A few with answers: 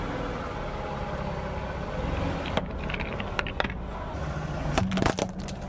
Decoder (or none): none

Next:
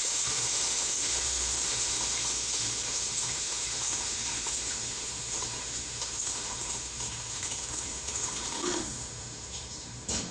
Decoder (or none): autoencoder, DAC-VAE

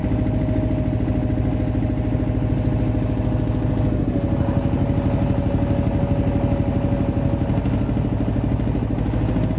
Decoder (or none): none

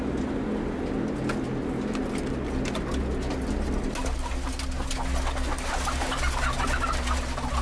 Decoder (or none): none